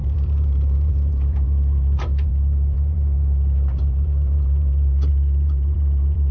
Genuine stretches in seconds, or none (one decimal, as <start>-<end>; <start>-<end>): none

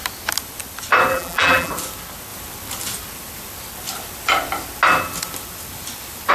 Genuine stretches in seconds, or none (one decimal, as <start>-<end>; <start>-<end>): 0.0-1.1; 1.7-6.3

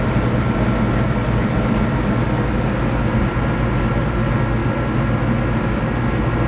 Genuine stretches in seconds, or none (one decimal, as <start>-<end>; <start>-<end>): 0.0-6.5

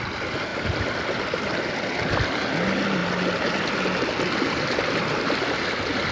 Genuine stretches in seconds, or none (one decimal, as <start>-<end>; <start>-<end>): 0.0-6.1

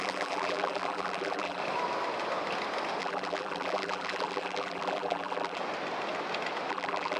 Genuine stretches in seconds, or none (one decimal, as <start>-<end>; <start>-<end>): 1.6-3.0; 5.6-6.7

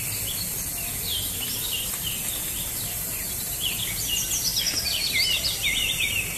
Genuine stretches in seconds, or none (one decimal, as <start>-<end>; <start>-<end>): 1.1-1.7; 4.5-5.4

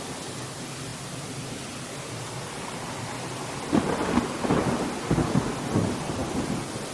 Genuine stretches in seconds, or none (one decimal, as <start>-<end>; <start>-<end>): 0.0-6.9

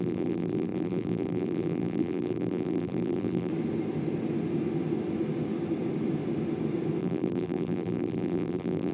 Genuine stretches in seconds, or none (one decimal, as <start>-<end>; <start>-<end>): 3.5-7.0